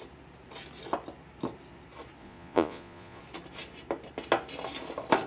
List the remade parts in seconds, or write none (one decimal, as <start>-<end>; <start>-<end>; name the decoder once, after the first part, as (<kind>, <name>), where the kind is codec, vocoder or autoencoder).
2.2-3.2 (vocoder, Vocos)